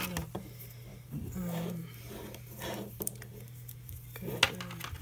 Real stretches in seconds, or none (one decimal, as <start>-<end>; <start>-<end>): 0.0-0.9; 3.9-5.0